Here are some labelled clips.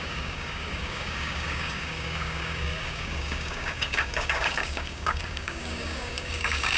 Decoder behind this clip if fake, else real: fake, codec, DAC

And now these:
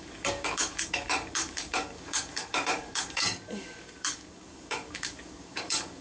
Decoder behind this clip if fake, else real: fake, codec, DAC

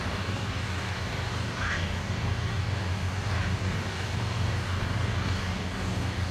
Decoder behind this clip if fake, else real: fake, codec, DAC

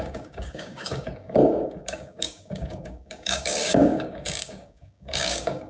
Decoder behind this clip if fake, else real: fake, codec, DAC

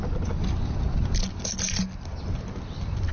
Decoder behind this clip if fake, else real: real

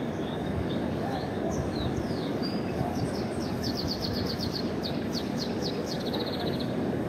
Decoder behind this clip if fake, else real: fake, codec, DAC